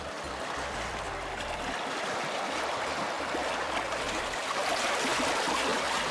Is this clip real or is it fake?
real